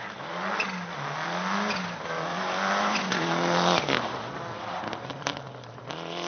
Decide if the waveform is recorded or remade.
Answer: recorded